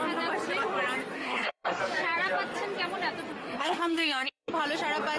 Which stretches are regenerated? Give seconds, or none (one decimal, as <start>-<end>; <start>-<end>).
1.1-1.8; 3.4-4.5